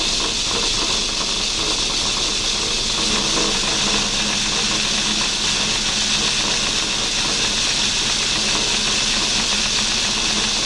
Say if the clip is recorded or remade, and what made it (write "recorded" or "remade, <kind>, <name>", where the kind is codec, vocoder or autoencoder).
recorded